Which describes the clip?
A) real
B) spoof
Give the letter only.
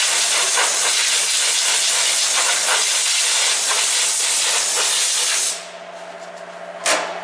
A